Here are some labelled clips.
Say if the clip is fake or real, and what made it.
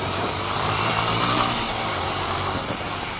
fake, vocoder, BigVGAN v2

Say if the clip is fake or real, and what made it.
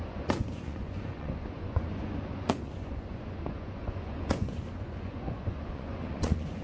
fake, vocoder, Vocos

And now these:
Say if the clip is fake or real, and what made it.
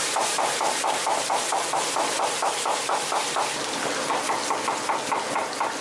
real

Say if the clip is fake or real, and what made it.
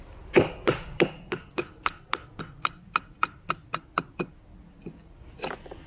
real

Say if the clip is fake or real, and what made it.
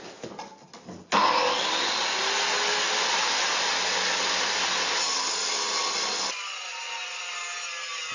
real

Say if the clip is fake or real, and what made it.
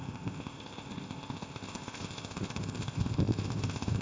fake, codec, ZipCodec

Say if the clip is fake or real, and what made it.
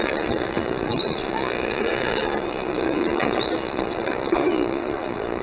fake, vocoder, Vocos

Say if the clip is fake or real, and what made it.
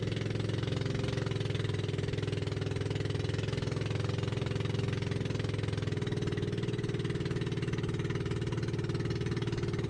real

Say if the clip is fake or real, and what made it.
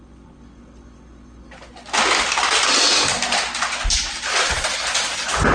real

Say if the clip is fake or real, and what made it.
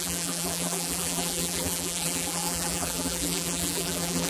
fake, vocoder, BigVGAN v2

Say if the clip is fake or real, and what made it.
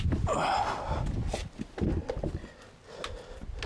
real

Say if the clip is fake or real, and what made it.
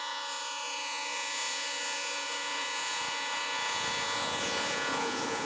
fake, vocoder, Vocos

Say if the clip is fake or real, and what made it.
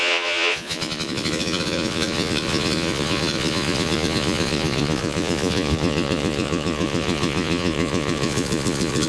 fake, vocoder, Vocos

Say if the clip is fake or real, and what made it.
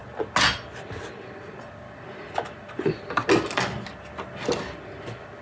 real